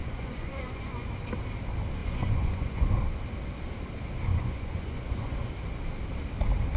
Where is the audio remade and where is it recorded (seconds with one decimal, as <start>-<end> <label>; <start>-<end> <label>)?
0.0-1.1 remade; 1.1-2.0 recorded; 2.0-2.9 remade; 2.9-4.3 recorded; 4.3-5.5 remade; 5.5-6.8 recorded